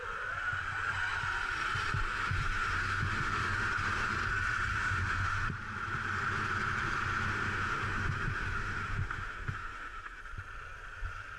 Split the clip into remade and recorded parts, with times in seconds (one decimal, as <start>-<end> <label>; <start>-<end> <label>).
0.0-2.2 recorded; 2.2-4.1 remade; 4.1-4.7 recorded; 4.7-5.5 remade; 5.5-7.3 recorded; 7.3-10.2 remade; 10.2-11.4 recorded